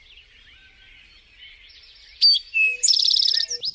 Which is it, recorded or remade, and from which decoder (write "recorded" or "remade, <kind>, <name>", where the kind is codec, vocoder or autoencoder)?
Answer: recorded